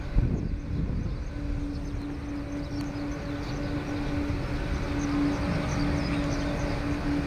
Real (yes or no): yes